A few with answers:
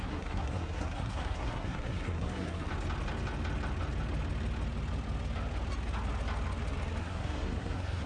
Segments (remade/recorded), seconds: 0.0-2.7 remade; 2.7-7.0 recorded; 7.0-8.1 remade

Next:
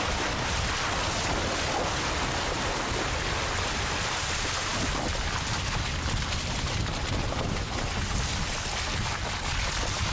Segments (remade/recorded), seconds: 0.0-10.1 recorded

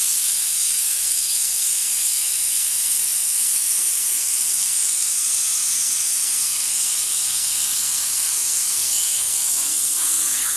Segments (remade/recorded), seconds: 0.0-10.6 remade

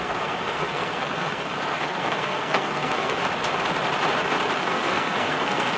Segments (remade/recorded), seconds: 0.0-3.2 remade; 3.2-4.6 recorded; 4.6-5.8 remade

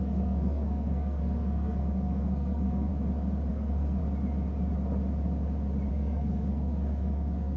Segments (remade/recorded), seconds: 0.0-2.9 remade; 2.9-3.5 recorded; 3.5-4.0 remade; 4.0-5.9 recorded; 5.9-7.6 remade

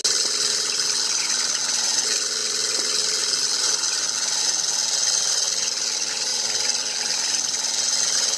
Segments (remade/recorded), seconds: 0.0-8.4 recorded

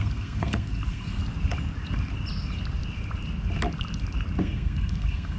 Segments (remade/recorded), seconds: 0.0-1.2 remade; 1.2-4.4 recorded; 4.4-5.4 remade